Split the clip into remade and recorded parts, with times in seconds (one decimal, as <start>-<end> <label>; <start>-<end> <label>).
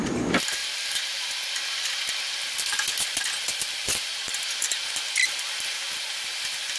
0.0-4.1 remade; 4.1-5.4 recorded; 5.4-6.8 remade